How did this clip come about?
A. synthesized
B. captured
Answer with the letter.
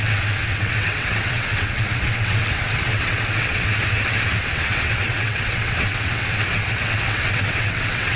A